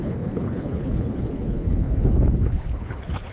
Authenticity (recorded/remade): remade